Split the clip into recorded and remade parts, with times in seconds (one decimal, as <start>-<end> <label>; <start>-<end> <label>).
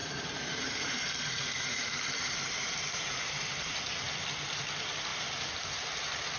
0.0-3.8 remade; 3.8-5.1 recorded; 5.1-6.0 remade; 6.0-6.4 recorded